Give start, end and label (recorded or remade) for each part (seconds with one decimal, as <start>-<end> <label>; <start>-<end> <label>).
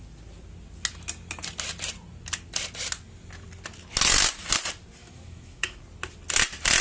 0.0-5.0 recorded; 5.0-5.8 remade; 5.8-6.8 recorded